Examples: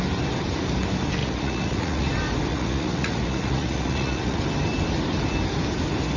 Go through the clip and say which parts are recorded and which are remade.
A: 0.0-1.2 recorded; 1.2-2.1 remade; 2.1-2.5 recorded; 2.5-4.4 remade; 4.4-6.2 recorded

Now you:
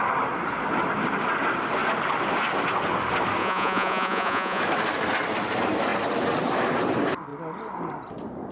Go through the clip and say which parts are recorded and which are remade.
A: 0.0-3.4 recorded; 3.4-4.6 remade; 4.6-8.5 recorded

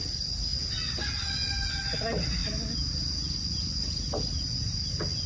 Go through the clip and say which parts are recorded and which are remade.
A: 0.0-5.3 recorded